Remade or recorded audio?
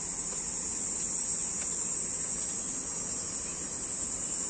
remade